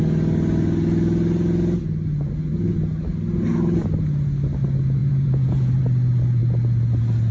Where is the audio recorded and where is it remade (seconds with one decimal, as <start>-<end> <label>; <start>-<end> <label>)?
0.0-5.0 recorded; 5.0-5.8 remade; 5.8-7.3 recorded